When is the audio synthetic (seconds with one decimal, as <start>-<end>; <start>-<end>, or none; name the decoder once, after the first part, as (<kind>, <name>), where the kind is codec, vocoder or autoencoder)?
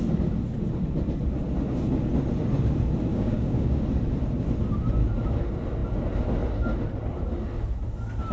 3.1-3.8 (codec, DAC)